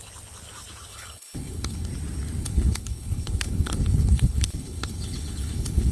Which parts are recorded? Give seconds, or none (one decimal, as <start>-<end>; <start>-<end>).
0.0-0.9; 1.9-2.4